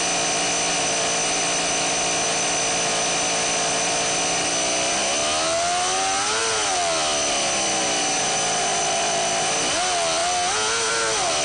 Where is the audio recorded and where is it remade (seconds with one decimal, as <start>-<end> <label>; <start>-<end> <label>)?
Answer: 0.0-11.4 recorded